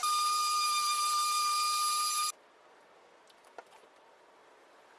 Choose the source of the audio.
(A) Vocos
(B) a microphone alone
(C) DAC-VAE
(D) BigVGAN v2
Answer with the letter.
B